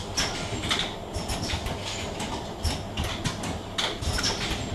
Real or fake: real